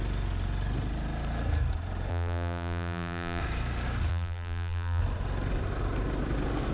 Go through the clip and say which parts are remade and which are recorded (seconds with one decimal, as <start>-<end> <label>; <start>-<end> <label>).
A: 0.0-2.1 recorded; 2.1-3.4 remade; 3.4-4.1 recorded; 4.1-5.0 remade; 5.0-6.7 recorded